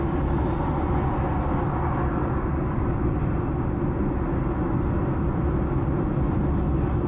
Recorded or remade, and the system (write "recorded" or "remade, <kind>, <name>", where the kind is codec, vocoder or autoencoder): recorded